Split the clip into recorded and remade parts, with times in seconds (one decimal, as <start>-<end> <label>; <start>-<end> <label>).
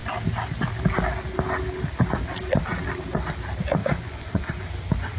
0.0-3.8 recorded; 3.8-4.6 remade; 4.6-5.2 recorded